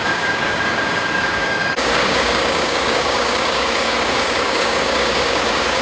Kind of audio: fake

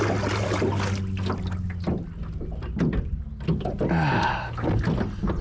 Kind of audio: real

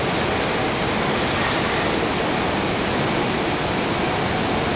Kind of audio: real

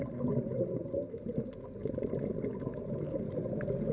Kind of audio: real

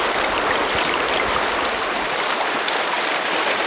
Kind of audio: real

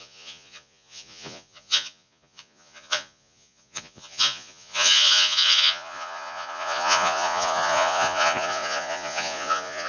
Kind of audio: fake